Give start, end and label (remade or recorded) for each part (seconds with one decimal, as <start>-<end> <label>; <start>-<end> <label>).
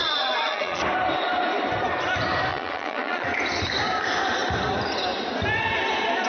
0.0-0.8 remade; 0.8-2.5 recorded; 2.5-3.4 remade; 3.4-6.3 recorded